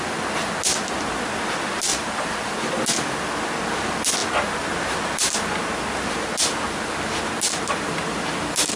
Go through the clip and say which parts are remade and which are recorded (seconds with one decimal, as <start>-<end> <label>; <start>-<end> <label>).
0.0-1.9 recorded; 1.9-2.8 remade; 2.8-8.8 recorded